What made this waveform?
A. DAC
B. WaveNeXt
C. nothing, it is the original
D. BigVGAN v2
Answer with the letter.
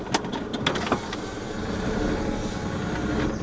C